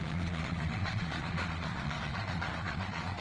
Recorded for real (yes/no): no